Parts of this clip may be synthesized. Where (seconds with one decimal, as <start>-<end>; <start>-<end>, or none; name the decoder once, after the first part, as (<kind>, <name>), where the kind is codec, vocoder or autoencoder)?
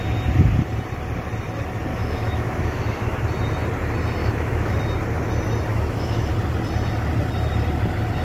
1.9-3.2 (autoencoder, DAC-VAE); 4.2-4.8; 5.7-6.3